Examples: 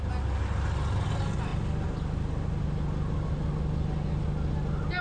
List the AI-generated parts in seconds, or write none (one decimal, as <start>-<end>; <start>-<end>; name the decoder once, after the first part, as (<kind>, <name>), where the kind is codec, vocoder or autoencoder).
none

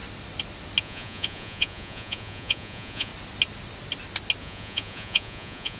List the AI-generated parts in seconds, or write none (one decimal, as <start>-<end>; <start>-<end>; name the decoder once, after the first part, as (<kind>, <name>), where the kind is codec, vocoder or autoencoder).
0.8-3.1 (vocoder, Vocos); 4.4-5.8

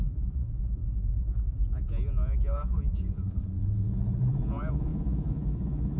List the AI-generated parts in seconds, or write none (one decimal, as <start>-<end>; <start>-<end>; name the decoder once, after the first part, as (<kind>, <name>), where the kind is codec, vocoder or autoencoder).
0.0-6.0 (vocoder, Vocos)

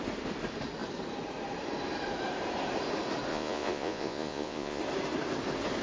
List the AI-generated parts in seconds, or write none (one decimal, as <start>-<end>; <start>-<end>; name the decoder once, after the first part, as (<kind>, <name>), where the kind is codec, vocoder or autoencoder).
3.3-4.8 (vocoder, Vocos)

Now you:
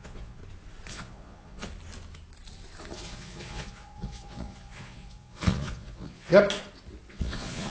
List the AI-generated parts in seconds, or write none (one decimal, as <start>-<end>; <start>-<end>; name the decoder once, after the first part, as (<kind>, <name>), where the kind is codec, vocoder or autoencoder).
0.0-0.4 (vocoder, Vocos); 0.9-1.7; 2.9-6.3; 7.1-7.7

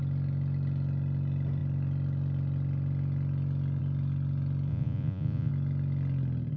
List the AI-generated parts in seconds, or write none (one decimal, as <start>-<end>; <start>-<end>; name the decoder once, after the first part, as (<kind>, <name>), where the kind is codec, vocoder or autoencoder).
4.7-5.5 (vocoder, Vocos)